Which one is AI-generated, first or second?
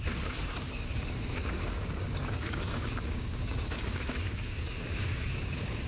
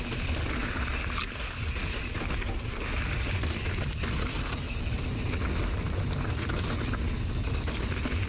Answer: first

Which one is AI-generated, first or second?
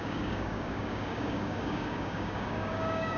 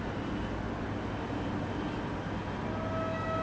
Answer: first